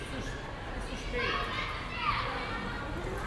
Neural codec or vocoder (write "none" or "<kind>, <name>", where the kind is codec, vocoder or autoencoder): none